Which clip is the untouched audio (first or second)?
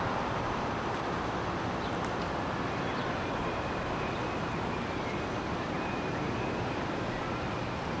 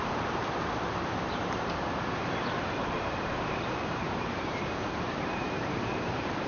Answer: first